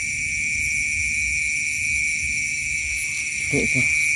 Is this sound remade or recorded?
recorded